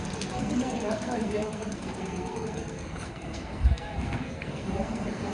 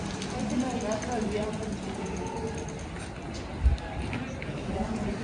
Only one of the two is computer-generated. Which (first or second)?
first